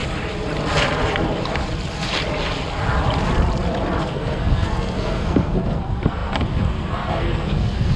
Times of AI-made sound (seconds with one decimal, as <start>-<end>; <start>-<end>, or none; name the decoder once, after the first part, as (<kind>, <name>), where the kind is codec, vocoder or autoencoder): 4.0-8.0 (codec, SNAC)

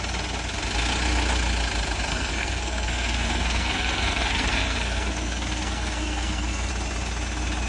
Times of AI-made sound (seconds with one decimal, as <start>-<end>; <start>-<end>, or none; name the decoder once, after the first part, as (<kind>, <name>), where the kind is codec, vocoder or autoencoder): 2.1-6.7 (codec, SNAC)

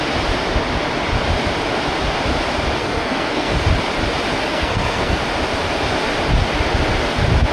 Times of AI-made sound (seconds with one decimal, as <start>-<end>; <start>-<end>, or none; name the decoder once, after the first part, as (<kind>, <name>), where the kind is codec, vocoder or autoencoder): 2.8-3.6 (codec, SNAC); 4.4-5.2

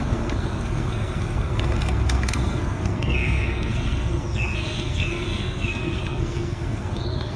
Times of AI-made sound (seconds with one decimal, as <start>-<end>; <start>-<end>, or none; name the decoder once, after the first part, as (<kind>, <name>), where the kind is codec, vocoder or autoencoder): 0.0-7.4 (codec, SNAC)

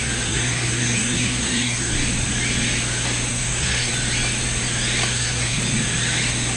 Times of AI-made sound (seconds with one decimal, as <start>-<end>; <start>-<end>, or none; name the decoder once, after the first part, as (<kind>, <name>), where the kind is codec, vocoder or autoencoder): 0.0-1.9 (codec, SNAC); 3.3-3.9; 5.1-5.6